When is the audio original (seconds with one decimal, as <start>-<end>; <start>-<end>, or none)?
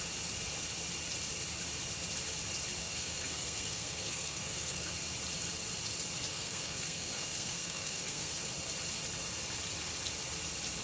0.0-2.8; 4.9-6.3; 8.4-10.8